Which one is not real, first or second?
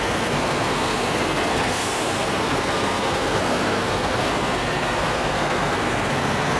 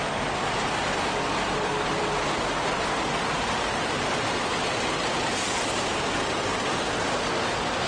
first